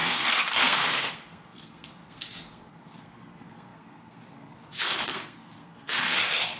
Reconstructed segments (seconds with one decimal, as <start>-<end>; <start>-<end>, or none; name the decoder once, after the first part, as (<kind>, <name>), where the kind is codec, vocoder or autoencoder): 0.0-6.6 (codec, SNAC)